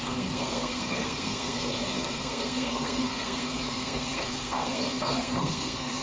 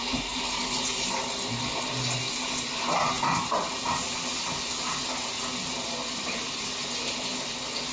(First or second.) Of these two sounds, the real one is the second